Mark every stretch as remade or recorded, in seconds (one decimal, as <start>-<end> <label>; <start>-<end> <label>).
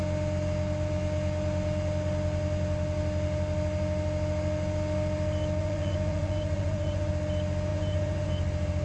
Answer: 0.0-5.6 recorded; 5.6-7.1 remade; 7.1-7.7 recorded; 7.7-8.3 remade; 8.3-8.8 recorded